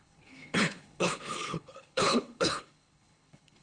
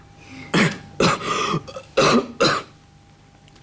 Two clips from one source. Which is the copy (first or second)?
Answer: first